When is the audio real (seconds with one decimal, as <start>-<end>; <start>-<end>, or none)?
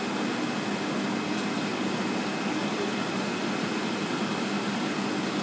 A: 0.0-1.7; 4.9-5.4